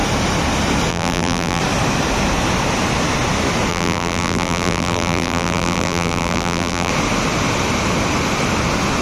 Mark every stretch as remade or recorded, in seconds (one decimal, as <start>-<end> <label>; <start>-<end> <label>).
0.0-0.9 recorded; 0.9-1.6 remade; 1.6-3.7 recorded; 3.7-6.9 remade; 6.9-9.0 recorded